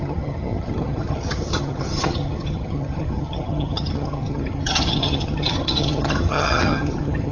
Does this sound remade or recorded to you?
remade